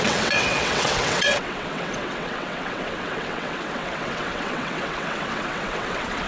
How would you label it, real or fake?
fake